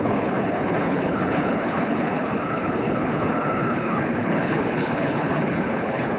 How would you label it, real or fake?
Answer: fake